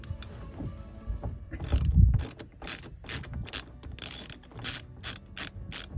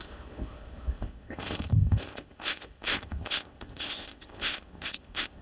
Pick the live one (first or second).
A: first